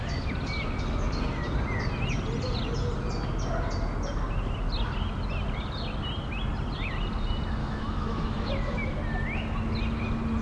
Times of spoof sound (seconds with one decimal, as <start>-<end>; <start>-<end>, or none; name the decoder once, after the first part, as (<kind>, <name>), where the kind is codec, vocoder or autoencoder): 7.6-8.5 (autoencoder, DAC-VAE)